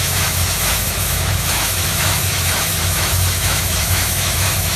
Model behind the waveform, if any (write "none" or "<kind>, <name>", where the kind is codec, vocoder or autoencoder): autoencoder, DAC-VAE